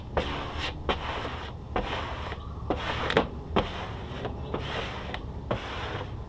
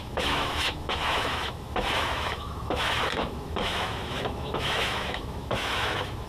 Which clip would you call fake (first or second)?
second